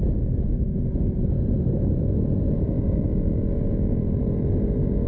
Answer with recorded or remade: recorded